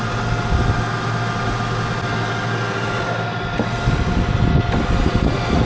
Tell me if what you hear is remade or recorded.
recorded